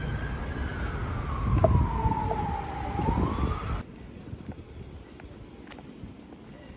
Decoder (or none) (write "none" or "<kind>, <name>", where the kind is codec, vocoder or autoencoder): none